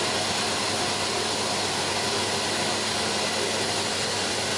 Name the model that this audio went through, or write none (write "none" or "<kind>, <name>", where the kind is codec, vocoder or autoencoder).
none